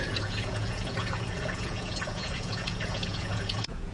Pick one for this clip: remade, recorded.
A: remade